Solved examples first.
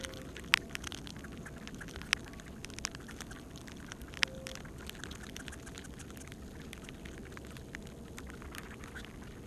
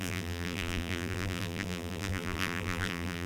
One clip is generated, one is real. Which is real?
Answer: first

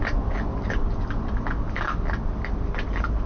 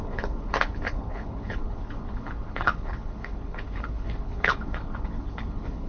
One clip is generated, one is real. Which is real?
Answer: first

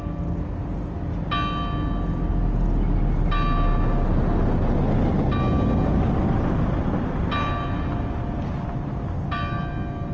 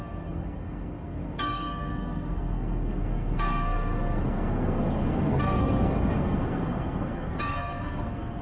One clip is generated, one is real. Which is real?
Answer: first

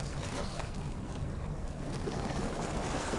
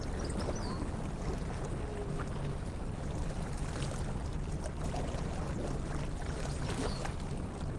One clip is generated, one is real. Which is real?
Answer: second